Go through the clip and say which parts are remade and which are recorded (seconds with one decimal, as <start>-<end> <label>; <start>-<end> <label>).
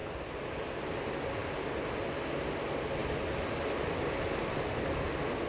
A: 0.0-5.5 recorded